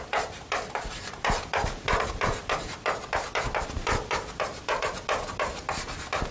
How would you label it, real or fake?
real